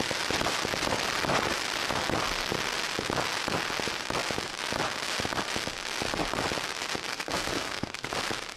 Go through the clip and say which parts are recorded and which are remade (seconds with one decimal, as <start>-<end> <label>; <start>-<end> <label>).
0.0-7.1 recorded; 7.1-8.1 remade; 8.1-8.6 recorded